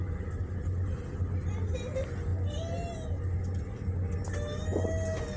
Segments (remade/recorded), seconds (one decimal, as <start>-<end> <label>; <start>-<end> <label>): 0.0-5.4 recorded